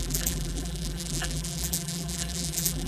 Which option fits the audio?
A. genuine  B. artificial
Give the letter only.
B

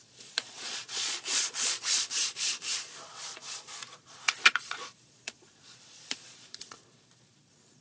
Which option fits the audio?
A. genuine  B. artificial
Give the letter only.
B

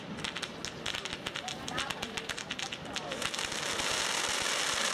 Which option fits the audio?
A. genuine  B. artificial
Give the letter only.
A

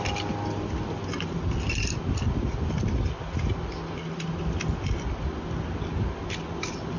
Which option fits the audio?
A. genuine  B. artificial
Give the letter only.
A